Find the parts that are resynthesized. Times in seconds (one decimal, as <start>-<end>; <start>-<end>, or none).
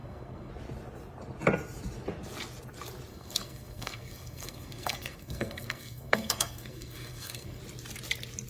0.0-0.5; 3.1-7.6